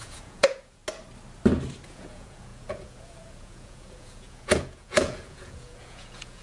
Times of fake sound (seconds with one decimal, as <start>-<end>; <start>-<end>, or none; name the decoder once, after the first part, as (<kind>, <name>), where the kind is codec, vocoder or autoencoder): 0.0-0.8 (vocoder, Vocos); 1.9-6.4